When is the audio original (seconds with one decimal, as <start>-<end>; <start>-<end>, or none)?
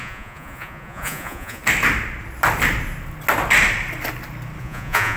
1.6-4.6